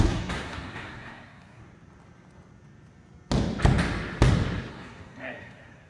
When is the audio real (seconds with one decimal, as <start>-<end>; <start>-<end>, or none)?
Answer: 1.6-4.7